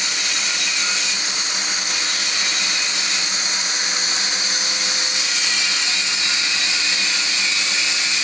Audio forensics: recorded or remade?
recorded